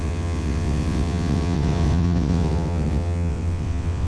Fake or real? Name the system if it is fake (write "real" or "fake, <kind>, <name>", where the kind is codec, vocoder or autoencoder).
fake, vocoder, WaveNeXt